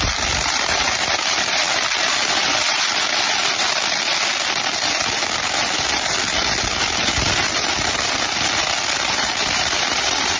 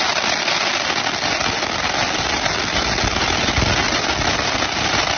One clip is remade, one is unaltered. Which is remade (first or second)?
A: first